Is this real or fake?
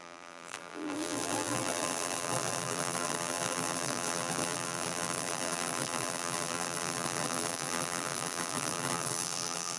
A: fake